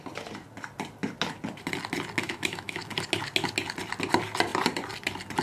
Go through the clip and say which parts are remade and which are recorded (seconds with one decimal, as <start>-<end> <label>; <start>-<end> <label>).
0.0-2.2 recorded; 2.2-2.8 remade; 2.8-5.4 recorded